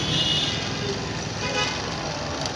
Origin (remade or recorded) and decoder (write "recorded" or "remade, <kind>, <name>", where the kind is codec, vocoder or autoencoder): recorded